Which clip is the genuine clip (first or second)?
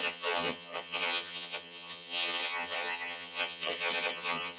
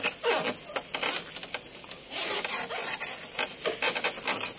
second